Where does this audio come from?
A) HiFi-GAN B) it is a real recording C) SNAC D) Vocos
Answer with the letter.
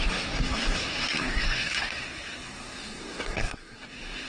C